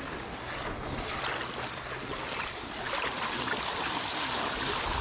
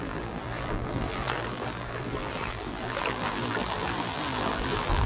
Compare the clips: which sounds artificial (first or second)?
second